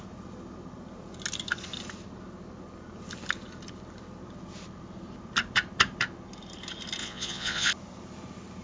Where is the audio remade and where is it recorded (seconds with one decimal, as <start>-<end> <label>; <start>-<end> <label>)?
0.0-7.0 recorded; 7.0-7.7 remade; 7.7-8.6 recorded